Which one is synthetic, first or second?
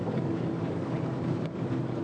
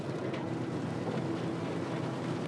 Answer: first